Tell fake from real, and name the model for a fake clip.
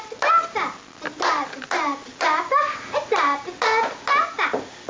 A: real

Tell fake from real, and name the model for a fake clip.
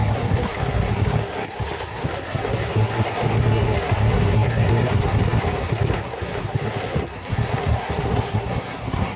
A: fake, codec, SNAC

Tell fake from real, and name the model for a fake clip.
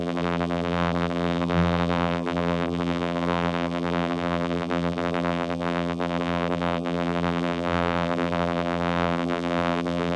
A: fake, vocoder, BigVGAN v2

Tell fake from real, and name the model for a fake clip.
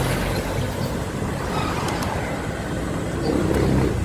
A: real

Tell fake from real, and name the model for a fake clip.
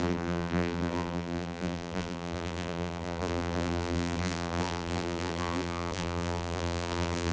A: fake, vocoder, BigVGAN v2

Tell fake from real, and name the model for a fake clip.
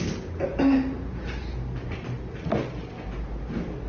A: real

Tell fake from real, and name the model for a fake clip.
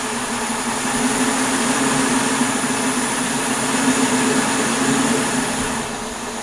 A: real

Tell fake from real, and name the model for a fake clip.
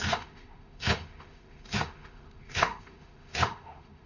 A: fake, autoencoder, DAC-VAE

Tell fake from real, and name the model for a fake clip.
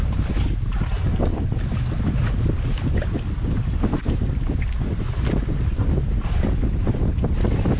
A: real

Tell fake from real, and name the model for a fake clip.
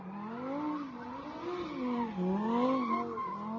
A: real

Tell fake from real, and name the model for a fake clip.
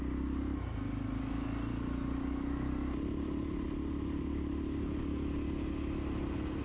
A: real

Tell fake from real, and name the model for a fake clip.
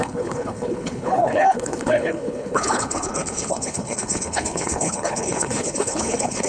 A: fake, codec, HILCodec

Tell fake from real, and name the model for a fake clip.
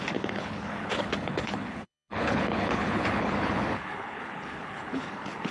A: fake, codec, HILCodec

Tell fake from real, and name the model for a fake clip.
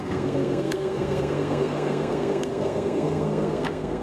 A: fake, codec, SNAC